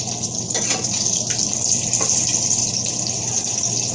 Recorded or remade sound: recorded